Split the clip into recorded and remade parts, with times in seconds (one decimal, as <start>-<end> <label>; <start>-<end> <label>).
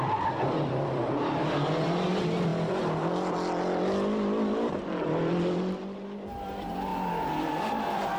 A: 0.0-2.5 remade; 2.5-6.3 recorded; 6.3-6.9 remade; 6.9-7.4 recorded; 7.4-8.2 remade